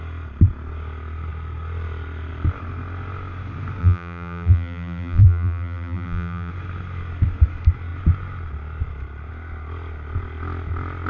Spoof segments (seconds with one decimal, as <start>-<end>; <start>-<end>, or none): 3.8-6.5